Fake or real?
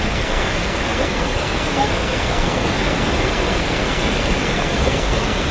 fake